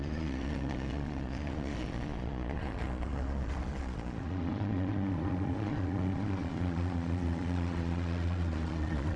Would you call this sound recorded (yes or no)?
no